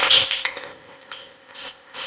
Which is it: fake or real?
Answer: fake